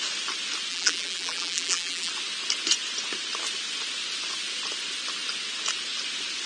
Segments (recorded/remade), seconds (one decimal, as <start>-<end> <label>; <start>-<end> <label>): 0.0-0.7 recorded; 0.7-2.1 remade; 2.1-6.5 recorded